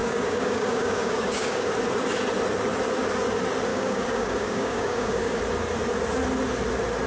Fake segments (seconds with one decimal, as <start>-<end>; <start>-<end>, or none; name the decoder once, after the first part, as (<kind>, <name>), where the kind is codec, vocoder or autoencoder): 0.0-1.7 (codec, DAC); 3.7-5.4